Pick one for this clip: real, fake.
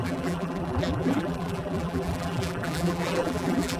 fake